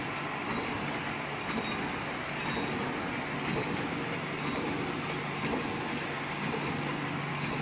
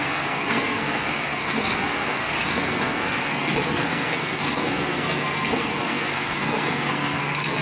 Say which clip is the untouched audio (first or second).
first